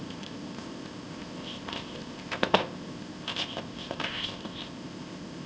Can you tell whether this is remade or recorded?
remade